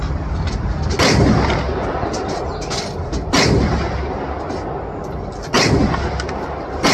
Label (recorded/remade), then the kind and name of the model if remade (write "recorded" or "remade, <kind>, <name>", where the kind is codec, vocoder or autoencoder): recorded